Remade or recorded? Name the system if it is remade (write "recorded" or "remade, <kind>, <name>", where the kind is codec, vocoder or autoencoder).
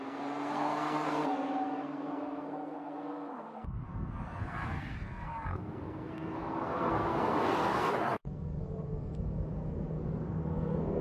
remade, codec, SNAC